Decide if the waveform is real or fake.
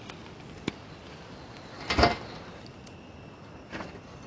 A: real